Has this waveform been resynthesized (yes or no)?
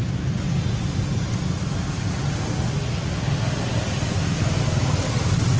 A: no